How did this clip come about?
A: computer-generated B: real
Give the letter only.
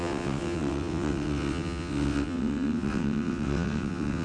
A